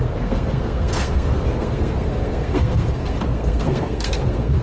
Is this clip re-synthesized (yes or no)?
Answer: yes